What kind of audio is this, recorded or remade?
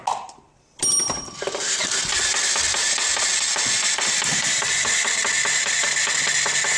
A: recorded